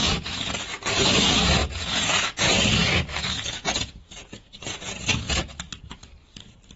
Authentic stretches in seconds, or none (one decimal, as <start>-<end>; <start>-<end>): 1.1-1.6; 2.5-3.2; 5.4-6.8